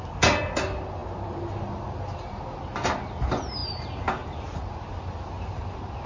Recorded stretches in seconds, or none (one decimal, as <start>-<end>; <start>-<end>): 0.0-6.1